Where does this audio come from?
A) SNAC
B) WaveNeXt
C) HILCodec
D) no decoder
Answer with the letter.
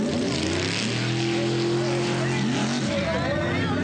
D